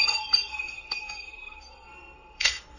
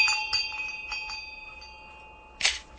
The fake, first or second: first